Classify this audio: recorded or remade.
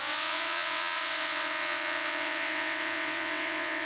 remade